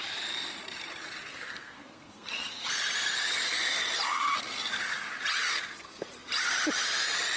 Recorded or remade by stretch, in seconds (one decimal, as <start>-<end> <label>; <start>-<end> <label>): 0.0-1.3 recorded; 1.3-2.7 remade; 2.7-7.4 recorded